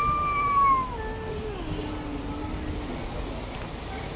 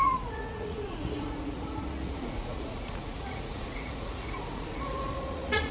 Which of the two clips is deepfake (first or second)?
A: second